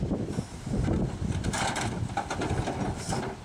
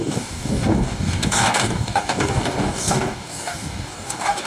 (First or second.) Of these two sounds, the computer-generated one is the second